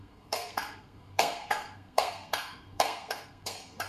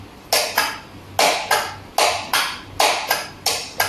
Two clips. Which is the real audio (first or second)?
second